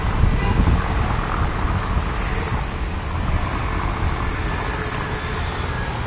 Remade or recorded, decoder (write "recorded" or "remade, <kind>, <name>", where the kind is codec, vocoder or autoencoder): recorded